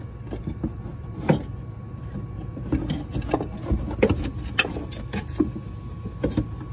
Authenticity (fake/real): real